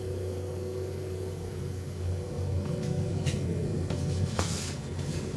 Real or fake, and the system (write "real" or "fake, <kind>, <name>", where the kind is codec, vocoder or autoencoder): fake, codec, SNAC